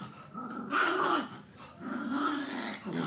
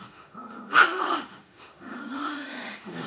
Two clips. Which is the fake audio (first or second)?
second